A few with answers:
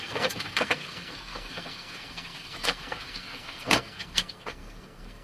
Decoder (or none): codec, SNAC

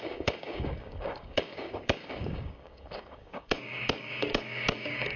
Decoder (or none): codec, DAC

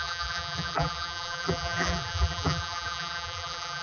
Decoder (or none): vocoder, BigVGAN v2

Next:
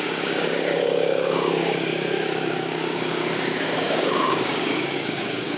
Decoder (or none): codec, DAC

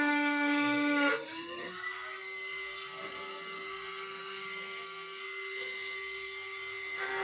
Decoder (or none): codec, SNAC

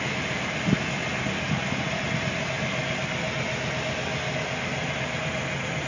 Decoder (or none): none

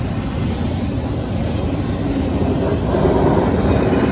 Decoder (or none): none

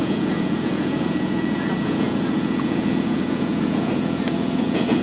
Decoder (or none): vocoder, Vocos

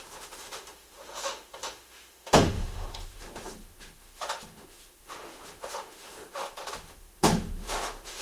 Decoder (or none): autoencoder, DAC-VAE